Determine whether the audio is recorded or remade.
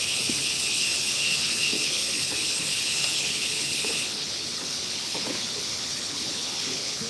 remade